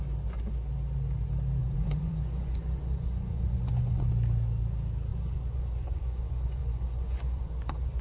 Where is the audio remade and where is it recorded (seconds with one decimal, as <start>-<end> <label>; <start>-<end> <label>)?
0.0-1.6 recorded; 1.6-4.1 remade; 4.1-5.1 recorded; 5.1-8.0 remade